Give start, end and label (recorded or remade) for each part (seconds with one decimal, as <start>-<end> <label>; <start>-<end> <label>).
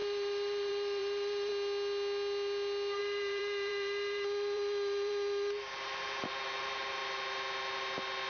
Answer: 0.0-1.5 remade; 1.5-3.0 recorded; 3.0-7.0 remade; 7.0-8.3 recorded